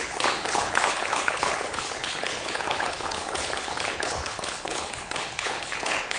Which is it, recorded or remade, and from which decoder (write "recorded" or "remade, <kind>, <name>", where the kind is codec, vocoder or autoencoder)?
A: remade, codec, HILCodec